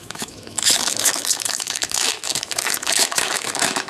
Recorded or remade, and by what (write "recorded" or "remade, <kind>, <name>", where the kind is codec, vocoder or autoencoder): remade, autoencoder, DAC-VAE